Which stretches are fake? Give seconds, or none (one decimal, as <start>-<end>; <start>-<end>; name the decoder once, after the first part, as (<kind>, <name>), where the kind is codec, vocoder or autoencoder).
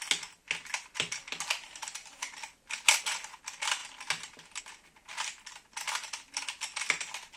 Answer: none